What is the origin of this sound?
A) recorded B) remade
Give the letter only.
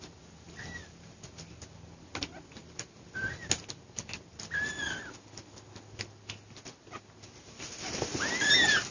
A